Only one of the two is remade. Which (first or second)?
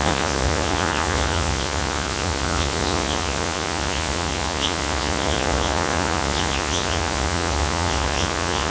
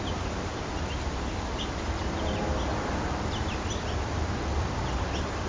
first